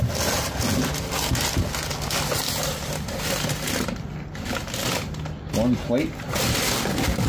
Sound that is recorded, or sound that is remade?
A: recorded